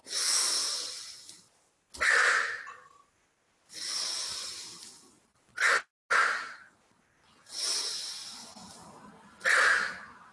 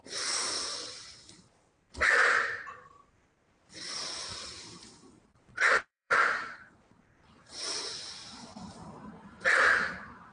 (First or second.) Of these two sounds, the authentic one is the first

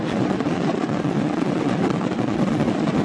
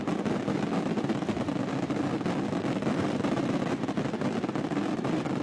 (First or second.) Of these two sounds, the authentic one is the second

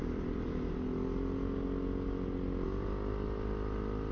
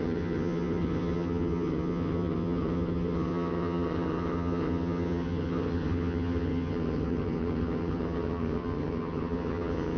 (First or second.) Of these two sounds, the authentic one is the first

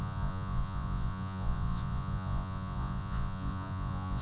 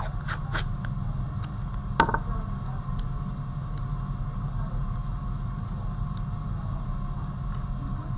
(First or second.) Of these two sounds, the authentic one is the second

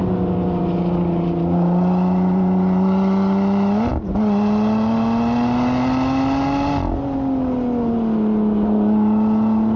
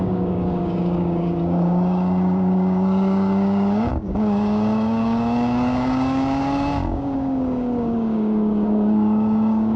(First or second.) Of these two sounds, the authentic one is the first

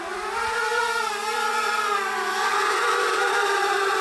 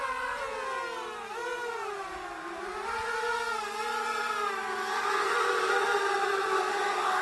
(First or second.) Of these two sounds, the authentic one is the second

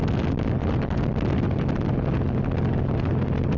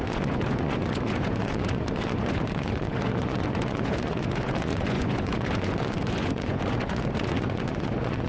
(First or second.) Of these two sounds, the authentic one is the first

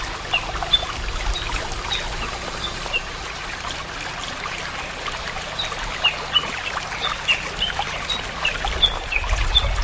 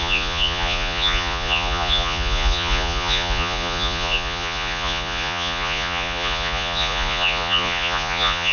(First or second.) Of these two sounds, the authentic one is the first